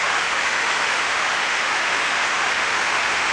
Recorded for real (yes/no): no